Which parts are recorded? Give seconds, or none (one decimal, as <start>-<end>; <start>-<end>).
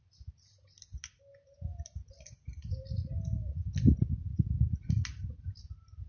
0.0-6.1